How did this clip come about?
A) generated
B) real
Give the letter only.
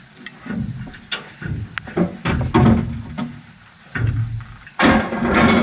B